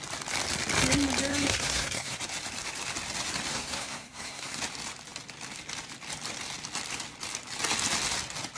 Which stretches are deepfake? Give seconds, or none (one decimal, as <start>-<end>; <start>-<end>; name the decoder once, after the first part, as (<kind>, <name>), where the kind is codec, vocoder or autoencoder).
1.3-2.2 (codec, SNAC); 3.5-4.6

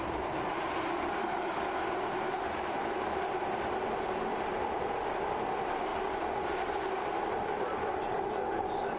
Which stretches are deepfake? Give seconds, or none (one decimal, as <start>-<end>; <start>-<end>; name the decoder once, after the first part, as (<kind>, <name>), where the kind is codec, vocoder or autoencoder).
none